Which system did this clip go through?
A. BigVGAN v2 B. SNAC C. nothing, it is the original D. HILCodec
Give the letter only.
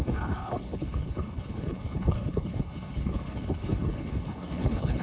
D